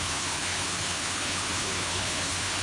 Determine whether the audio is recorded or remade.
remade